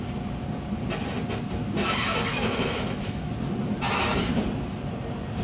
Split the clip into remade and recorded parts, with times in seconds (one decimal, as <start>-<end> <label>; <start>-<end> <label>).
0.0-2.3 recorded; 2.3-3.3 remade; 3.3-5.4 recorded